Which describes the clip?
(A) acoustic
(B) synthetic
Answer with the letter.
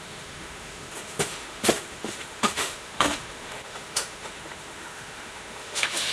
B